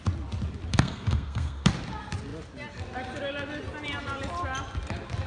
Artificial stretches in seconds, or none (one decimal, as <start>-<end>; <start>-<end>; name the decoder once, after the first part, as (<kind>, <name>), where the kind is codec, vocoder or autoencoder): 0.7-1.7 (codec, SNAC)